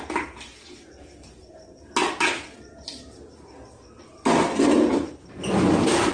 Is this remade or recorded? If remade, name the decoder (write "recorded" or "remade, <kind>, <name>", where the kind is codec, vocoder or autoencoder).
recorded